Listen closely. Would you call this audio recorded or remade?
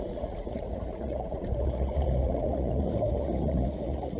remade